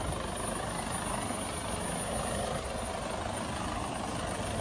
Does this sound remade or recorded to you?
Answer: recorded